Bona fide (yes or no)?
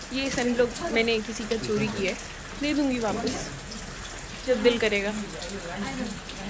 yes